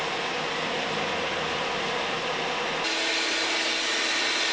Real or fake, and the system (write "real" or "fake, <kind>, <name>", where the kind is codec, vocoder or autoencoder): real